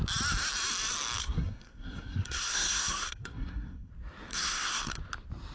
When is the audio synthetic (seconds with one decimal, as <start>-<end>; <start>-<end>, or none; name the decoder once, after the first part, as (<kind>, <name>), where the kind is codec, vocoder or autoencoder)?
1.2-3.9 (codec, SNAC); 4.3-5.0